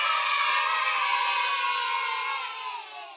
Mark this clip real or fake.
real